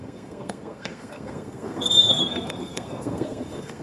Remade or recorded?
remade